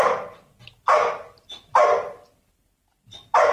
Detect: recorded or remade recorded